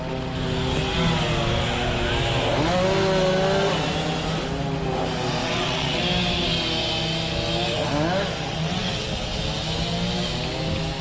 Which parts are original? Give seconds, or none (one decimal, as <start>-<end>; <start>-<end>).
0.0-5.4; 6.0-8.5; 9.4-11.0